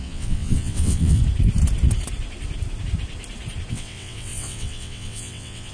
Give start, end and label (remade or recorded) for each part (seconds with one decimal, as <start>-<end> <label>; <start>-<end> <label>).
0.0-1.2 remade; 1.2-3.7 recorded; 3.7-5.7 remade